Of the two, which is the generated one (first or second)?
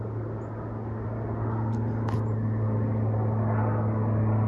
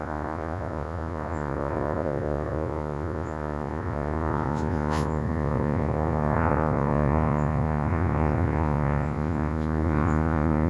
second